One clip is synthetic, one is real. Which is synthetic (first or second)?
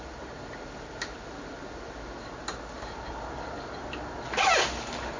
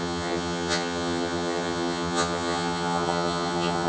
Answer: second